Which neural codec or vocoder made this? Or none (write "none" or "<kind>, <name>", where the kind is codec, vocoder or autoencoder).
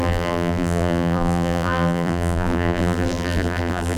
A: vocoder, BigVGAN v2